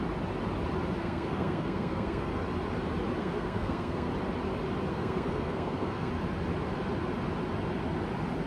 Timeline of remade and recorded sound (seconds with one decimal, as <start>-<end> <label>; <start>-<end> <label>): 0.0-1.0 recorded; 1.0-2.3 remade; 2.3-3.2 recorded; 3.2-4.1 remade; 4.1-4.9 recorded; 4.9-6.1 remade; 6.1-8.5 recorded

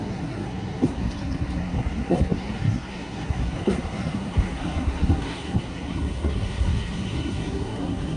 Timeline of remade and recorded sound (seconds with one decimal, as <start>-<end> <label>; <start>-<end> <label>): 0.0-8.2 remade

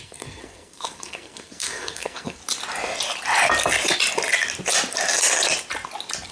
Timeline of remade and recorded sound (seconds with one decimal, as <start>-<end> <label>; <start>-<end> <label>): 0.0-2.4 remade; 2.4-6.3 recorded

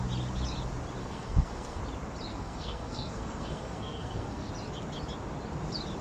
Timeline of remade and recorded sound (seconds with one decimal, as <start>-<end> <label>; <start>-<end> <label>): 0.0-1.0 recorded; 1.0-1.8 remade; 1.8-2.3 recorded; 2.3-4.5 remade; 4.5-6.0 recorded

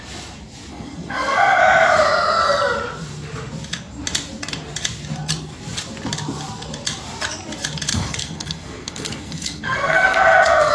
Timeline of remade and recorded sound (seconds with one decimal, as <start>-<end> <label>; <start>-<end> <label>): 0.0-0.7 recorded; 0.7-1.6 remade; 1.6-7.9 recorded; 7.9-10.7 remade

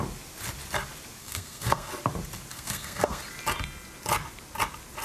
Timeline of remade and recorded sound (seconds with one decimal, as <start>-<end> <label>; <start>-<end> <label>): 0.0-1.2 recorded; 1.2-1.9 remade; 1.9-2.5 recorded; 2.5-3.2 remade; 3.2-5.0 recorded

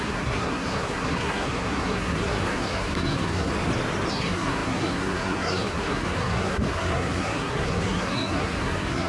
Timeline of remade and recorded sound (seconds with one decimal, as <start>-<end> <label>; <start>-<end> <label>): 0.0-3.5 remade; 3.5-4.1 recorded; 4.1-9.1 remade

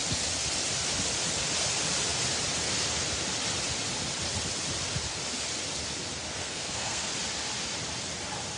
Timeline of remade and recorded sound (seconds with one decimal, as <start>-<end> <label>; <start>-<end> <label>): 0.0-6.4 recorded; 6.4-7.1 remade; 7.1-8.6 recorded